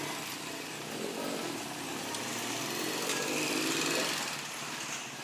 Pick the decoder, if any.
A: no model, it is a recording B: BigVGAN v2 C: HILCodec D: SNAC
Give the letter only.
A